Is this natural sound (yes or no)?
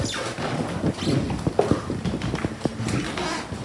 yes